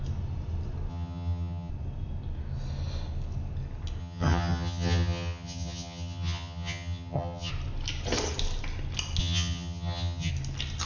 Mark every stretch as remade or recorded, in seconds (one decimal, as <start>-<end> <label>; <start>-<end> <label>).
0.0-0.9 recorded; 0.9-1.7 remade; 1.7-4.0 recorded; 4.0-7.5 remade; 7.5-9.2 recorded; 9.2-10.3 remade; 10.3-10.9 recorded